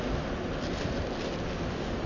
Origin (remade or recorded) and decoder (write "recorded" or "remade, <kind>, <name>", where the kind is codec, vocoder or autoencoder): recorded